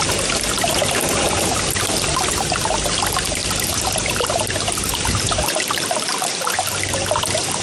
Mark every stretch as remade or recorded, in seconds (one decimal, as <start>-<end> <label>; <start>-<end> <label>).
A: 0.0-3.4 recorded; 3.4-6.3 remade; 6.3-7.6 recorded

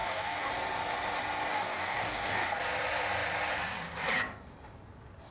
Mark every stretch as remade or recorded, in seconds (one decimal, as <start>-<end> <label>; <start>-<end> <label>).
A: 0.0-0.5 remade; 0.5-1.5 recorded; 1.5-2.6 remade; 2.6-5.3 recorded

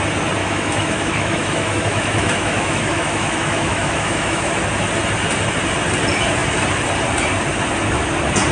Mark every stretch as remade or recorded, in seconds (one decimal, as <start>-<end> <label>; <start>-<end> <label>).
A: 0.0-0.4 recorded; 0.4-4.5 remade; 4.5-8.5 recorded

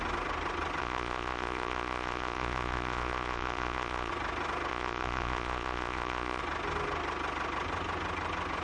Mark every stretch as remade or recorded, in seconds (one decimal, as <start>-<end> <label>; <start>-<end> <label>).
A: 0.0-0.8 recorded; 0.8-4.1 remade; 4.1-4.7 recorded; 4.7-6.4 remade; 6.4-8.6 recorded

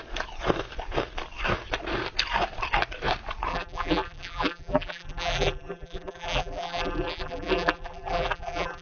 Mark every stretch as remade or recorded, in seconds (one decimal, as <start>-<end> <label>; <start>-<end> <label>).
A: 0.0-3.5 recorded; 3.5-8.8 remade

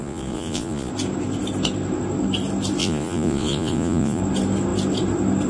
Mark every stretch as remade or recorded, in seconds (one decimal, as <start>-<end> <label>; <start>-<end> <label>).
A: 0.0-0.9 remade; 0.9-2.8 recorded; 2.8-4.2 remade; 4.2-5.5 recorded

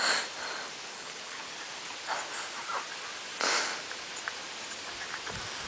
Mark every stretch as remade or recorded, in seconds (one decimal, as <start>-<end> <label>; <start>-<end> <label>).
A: 0.0-0.9 recorded; 0.9-1.5 remade; 1.5-5.7 recorded

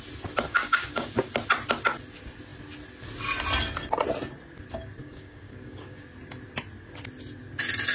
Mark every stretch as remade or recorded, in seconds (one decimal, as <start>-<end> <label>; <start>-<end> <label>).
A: 0.0-0.5 recorded; 0.5-1.3 remade; 1.3-5.0 recorded; 5.0-6.0 remade; 6.0-7.9 recorded